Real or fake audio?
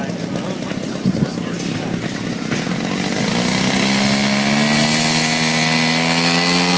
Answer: real